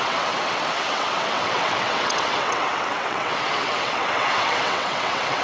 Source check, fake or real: fake